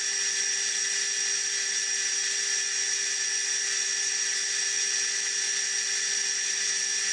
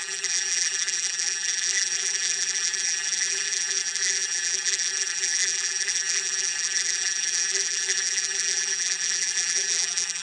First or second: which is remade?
second